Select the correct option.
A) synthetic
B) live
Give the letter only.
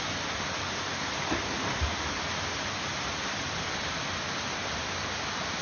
B